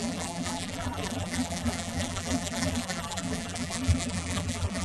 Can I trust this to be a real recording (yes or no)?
no